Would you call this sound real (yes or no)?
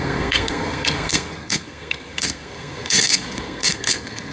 no